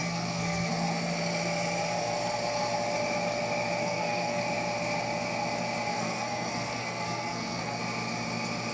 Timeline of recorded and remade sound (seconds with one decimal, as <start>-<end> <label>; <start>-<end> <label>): 0.0-0.7 remade; 0.7-3.8 recorded; 3.8-4.4 remade; 4.4-5.9 recorded; 5.9-7.8 remade; 7.8-8.7 recorded